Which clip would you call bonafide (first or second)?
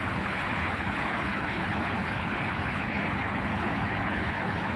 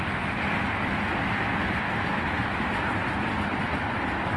second